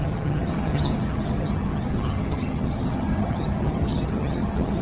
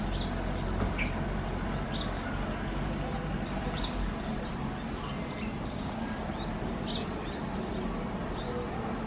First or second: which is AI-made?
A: first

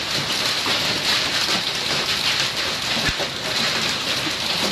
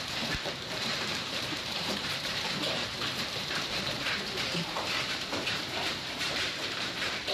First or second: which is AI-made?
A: second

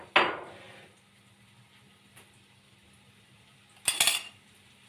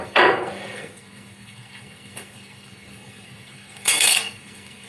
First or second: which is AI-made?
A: second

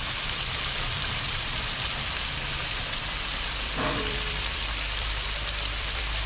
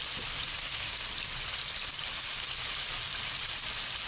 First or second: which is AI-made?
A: first